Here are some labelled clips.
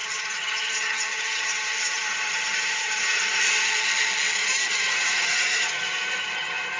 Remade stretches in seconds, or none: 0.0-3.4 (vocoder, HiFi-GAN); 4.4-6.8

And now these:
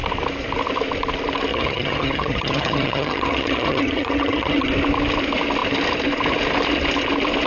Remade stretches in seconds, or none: 1.5-4.7 (vocoder, HiFi-GAN)